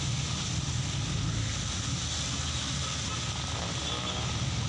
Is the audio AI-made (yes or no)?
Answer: no